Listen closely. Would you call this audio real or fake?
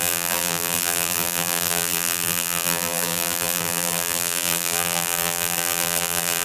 fake